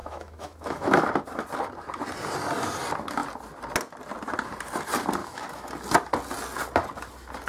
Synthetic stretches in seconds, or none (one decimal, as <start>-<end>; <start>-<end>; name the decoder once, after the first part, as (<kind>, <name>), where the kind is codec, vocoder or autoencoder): 0.0-1.1 (autoencoder, DAC-VAE); 5.2-5.7